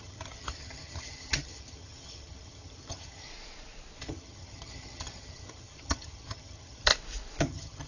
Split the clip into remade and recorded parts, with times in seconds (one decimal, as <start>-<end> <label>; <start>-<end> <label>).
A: 0.0-3.3 remade; 3.3-4.0 recorded; 4.0-6.9 remade; 6.9-7.4 recorded; 7.4-7.9 remade